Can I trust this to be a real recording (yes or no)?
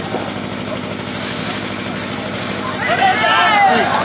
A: yes